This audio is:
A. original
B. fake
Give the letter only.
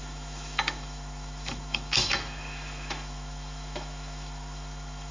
B